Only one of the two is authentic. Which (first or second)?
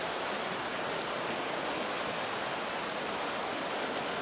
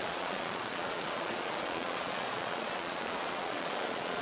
first